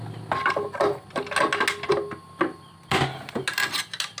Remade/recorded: recorded